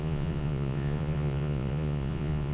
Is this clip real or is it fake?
fake